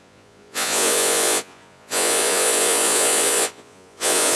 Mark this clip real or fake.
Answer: fake